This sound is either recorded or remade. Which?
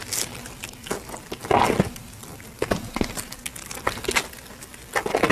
recorded